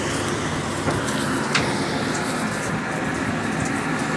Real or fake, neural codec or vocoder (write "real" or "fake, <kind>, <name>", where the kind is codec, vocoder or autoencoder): real